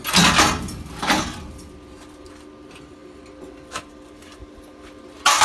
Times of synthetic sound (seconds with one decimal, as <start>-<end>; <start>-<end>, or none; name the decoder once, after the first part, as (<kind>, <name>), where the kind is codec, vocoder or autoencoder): none